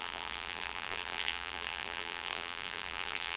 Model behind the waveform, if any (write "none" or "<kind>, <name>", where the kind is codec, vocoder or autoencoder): vocoder, BigVGAN v2